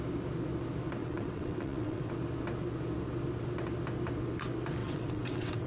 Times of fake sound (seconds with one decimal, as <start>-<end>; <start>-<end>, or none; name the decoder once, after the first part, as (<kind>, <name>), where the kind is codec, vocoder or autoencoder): 1.0-2.1 (vocoder, WaveNeXt); 4.8-5.7